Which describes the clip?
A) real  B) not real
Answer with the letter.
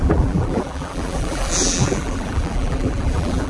B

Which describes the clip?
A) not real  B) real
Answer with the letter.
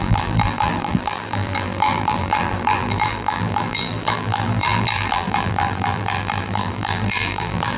A